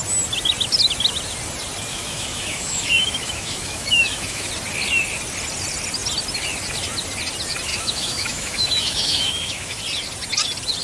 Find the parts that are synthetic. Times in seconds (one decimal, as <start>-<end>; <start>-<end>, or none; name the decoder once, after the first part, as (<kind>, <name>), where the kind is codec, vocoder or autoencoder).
1.9-4.5 (autoencoder, DAC-VAE); 7.7-9.8